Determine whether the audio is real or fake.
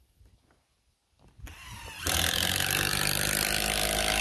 real